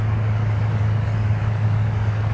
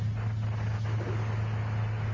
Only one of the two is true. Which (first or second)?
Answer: second